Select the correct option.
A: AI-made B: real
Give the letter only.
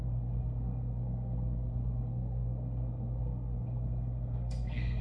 A